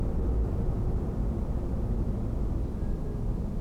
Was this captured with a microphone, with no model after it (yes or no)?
no